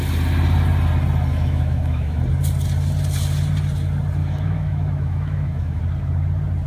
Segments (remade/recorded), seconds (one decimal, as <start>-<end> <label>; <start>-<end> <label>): 0.0-1.3 recorded; 1.3-2.2 remade; 2.2-4.2 recorded; 4.2-5.8 remade; 5.8-6.7 recorded